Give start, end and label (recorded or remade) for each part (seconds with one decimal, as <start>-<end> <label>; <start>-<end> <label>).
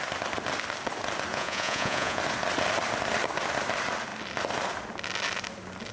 0.0-1.3 recorded; 1.3-2.2 remade; 2.2-5.9 recorded